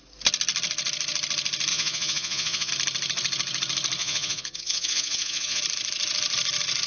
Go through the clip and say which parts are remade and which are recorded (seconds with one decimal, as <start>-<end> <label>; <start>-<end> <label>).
0.0-1.7 recorded; 1.7-2.7 remade; 2.7-4.0 recorded; 4.0-5.6 remade; 5.6-6.9 recorded